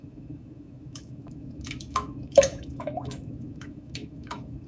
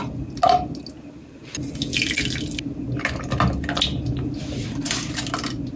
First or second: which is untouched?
second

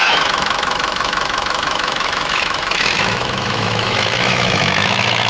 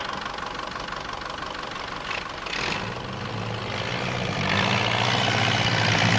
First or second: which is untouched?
second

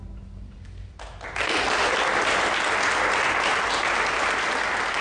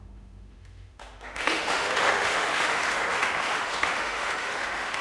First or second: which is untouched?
first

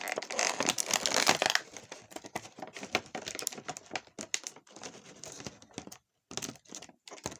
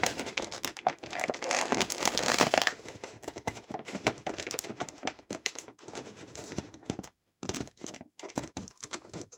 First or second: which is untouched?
first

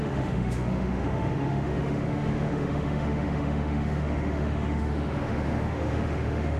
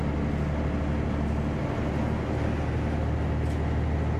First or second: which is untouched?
second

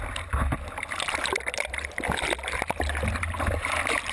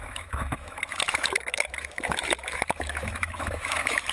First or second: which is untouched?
first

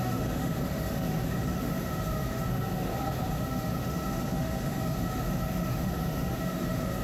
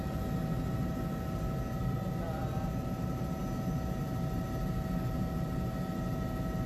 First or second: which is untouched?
second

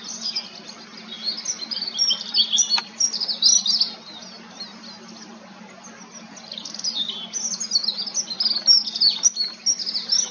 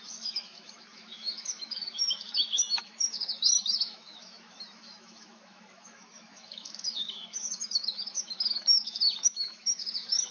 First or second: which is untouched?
first